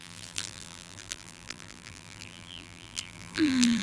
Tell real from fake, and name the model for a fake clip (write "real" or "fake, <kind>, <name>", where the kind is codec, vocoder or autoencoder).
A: fake, vocoder, BigVGAN v2